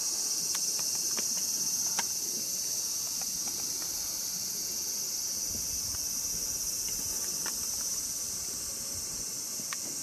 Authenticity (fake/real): real